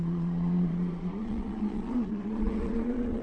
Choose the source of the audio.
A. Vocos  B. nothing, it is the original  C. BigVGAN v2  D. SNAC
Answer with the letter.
A